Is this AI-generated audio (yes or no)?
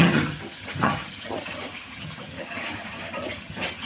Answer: yes